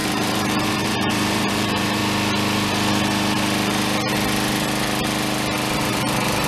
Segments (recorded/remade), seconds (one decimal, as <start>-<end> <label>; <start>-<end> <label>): 0.0-2.0 remade; 2.0-5.7 recorded; 5.7-6.5 remade